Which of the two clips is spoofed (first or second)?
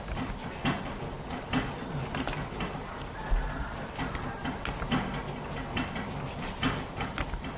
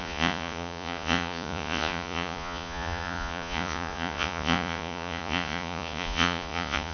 second